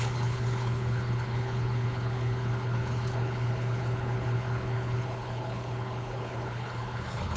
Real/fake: fake